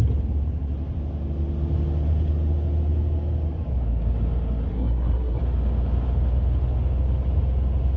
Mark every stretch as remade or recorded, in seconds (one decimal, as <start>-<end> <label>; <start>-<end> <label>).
0.0-4.7 recorded; 4.7-5.4 remade; 5.4-8.0 recorded